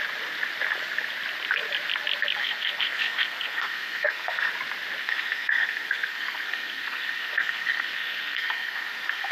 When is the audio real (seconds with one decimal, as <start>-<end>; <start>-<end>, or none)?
0.0-2.4; 4.5-5.0